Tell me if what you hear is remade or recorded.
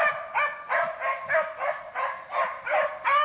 recorded